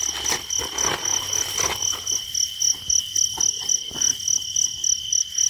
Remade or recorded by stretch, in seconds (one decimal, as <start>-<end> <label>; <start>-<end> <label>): 0.0-5.5 recorded

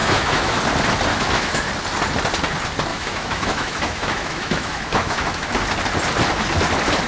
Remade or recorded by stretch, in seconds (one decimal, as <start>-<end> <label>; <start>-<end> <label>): 0.0-0.6 remade; 0.6-1.1 recorded; 1.1-1.6 remade; 1.6-2.9 recorded; 2.9-5.5 remade; 5.5-7.1 recorded

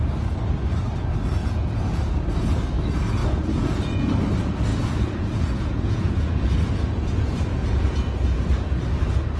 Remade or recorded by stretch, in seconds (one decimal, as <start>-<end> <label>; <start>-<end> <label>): 0.0-1.4 recorded; 1.4-2.0 remade; 2.0-3.2 recorded; 3.2-4.1 remade; 4.1-4.7 recorded; 4.7-8.4 remade; 8.4-9.4 recorded

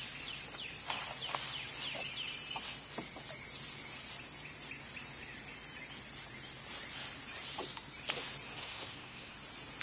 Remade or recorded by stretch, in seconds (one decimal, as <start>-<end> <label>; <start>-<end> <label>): 0.0-8.6 recorded; 8.6-9.3 remade; 9.3-9.8 recorded